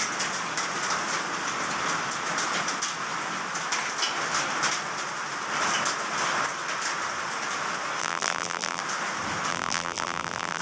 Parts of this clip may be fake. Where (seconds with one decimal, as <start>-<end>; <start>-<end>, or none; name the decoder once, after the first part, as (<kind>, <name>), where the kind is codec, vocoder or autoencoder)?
8.0-8.8 (vocoder, BigVGAN v2); 9.5-10.6